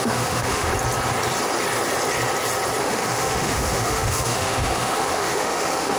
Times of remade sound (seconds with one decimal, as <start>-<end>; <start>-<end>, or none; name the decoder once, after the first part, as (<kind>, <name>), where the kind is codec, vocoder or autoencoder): 0.0-0.7 (autoencoder, DAC-VAE); 2.8-6.0

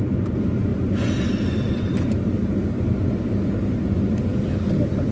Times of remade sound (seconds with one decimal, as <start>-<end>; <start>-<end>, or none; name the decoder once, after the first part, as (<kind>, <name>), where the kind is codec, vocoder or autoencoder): none

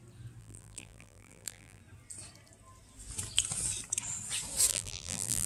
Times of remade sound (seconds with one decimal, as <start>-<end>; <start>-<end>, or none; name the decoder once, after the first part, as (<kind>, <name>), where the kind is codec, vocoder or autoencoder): 0.4-1.8 (vocoder, BigVGAN v2); 4.7-5.5

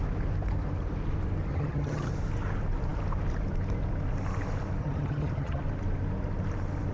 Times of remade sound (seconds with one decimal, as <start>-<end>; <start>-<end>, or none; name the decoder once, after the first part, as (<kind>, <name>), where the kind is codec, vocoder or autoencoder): 1.5-2.1 (vocoder, HiFi-GAN); 4.8-5.6

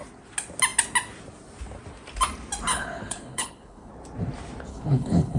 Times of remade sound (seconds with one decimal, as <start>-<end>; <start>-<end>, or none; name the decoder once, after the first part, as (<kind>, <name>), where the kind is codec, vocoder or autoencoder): 2.7-3.9 (codec, HILCodec); 4.7-5.4